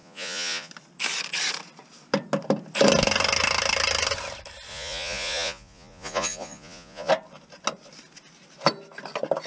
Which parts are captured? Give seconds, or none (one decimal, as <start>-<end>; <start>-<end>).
0.7-4.7; 7.1-9.5